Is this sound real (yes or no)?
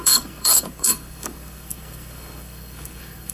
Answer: no